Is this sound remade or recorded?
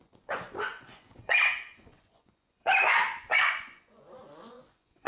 remade